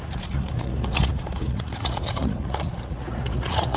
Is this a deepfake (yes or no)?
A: yes